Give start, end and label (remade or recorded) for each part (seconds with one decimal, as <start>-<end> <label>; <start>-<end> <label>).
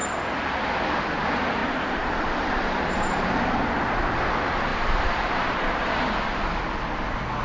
0.0-1.6 recorded; 1.6-3.6 remade; 3.6-4.7 recorded; 4.7-5.5 remade; 5.5-7.4 recorded